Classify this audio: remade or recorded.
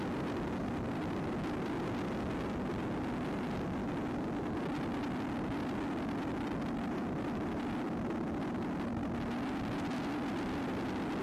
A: remade